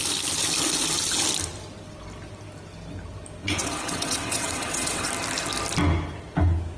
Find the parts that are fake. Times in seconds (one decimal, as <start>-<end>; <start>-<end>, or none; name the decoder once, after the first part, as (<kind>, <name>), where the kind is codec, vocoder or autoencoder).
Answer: 3.4-5.1 (vocoder, WaveNeXt)